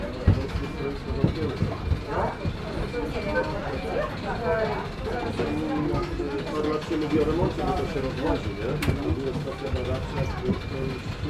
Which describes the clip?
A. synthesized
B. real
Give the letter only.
B